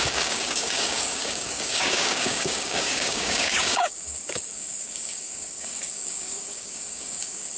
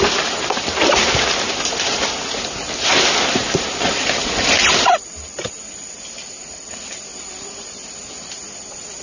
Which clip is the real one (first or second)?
second